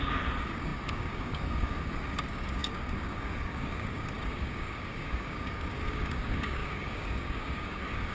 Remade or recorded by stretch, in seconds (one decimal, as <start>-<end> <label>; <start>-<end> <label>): 0.0-8.1 remade